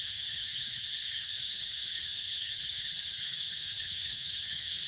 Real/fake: fake